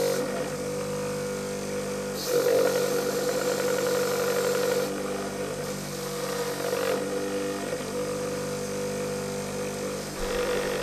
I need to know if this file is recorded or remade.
recorded